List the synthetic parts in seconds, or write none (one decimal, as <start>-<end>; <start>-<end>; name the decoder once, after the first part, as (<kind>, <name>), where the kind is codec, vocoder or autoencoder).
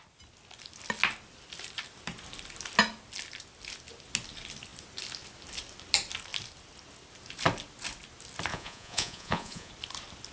8.5-9.7 (vocoder, Vocos)